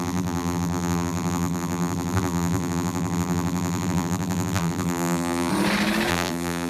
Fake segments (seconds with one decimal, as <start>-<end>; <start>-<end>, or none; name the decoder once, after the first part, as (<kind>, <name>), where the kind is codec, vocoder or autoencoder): 0.0-5.5 (vocoder, BigVGAN v2); 6.1-6.7